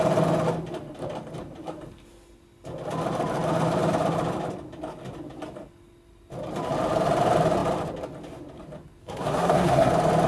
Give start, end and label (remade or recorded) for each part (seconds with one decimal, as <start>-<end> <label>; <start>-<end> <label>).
0.0-9.0 recorded; 9.0-9.9 remade; 9.9-10.3 recorded